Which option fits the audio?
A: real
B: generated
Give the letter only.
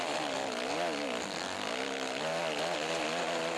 A